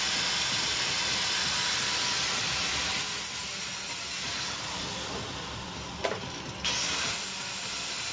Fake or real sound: real